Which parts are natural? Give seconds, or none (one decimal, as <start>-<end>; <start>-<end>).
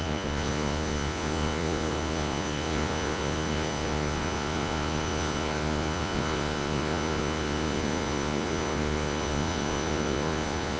none